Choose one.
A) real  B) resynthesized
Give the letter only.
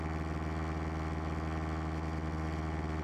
A